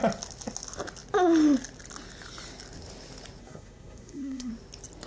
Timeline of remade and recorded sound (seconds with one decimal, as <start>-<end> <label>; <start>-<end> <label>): 0.0-3.4 recorded; 3.4-4.5 remade; 4.5-5.1 recorded